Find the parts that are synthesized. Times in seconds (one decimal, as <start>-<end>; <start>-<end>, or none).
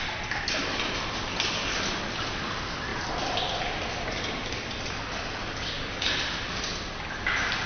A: 5.4-6.1